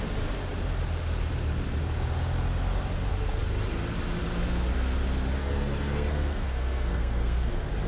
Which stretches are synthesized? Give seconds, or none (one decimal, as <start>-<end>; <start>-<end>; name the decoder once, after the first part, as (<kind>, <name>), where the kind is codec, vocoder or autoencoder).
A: 5.4-7.5 (codec, SNAC)